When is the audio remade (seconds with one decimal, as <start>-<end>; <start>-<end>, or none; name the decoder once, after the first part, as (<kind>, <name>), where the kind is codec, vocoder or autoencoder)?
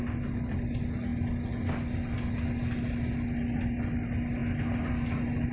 none